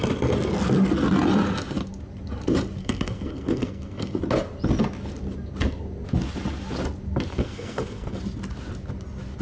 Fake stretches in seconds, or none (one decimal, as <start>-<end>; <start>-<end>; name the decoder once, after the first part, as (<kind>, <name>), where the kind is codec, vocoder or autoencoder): 2.8-4.2 (codec, SNAC); 7.3-8.2